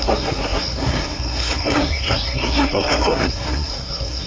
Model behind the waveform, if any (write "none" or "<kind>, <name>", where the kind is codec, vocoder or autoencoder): codec, SNAC